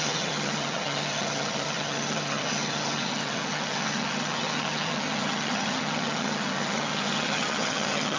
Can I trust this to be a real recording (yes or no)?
no